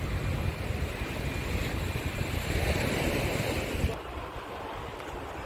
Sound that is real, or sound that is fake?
real